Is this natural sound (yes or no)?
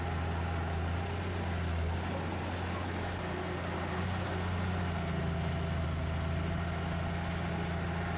yes